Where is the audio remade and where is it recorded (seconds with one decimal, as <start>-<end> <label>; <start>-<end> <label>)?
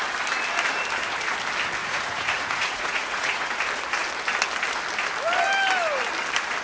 0.0-1.8 recorded; 1.8-3.5 remade; 3.5-6.6 recorded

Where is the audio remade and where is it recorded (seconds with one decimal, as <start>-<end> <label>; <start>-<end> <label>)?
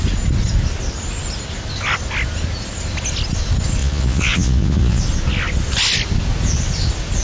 0.0-3.8 recorded; 3.8-5.0 remade; 5.0-7.2 recorded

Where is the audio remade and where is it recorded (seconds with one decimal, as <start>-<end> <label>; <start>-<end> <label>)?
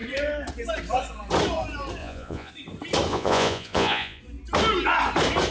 0.0-2.0 recorded; 2.0-2.5 remade; 2.5-3.1 recorded; 3.1-4.2 remade; 4.2-5.5 recorded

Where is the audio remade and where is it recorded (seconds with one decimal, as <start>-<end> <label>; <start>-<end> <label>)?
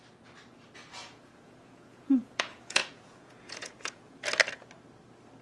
0.0-1.0 recorded; 1.0-4.2 remade; 4.2-5.4 recorded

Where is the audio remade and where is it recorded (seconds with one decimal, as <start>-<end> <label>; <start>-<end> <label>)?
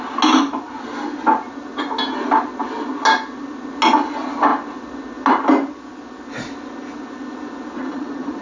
0.0-7.8 recorded; 7.8-8.4 remade